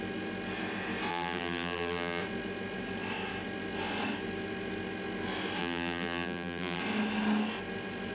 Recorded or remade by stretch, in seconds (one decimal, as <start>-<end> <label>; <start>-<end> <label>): 0.0-1.1 recorded; 1.1-2.2 remade; 2.2-5.6 recorded; 5.6-6.8 remade; 6.8-8.1 recorded